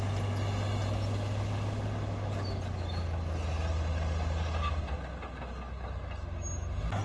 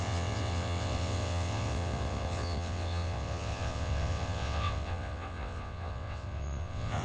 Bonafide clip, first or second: first